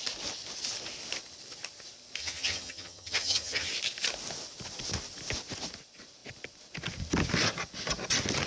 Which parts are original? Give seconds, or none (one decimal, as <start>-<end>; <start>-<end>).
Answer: 0.0-2.2; 3.7-8.5